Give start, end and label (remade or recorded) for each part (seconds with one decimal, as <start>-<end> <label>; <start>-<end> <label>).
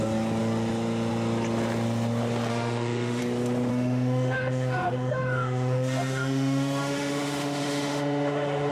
0.0-2.5 recorded; 2.5-3.2 remade; 3.2-3.7 recorded; 3.7-8.7 remade